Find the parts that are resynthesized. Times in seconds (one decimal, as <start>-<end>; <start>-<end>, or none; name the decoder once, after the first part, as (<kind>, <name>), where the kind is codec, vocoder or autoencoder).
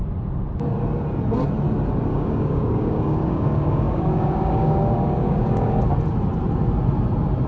2.1-5.8 (codec, DAC)